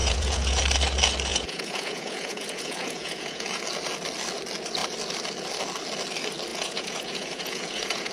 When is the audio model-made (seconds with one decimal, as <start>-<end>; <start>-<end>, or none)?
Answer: 0.0-0.6; 1.3-3.6; 6.5-8.1